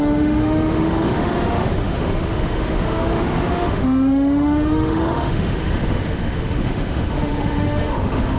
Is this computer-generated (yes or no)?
yes